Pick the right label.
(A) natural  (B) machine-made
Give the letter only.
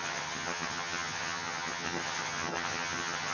B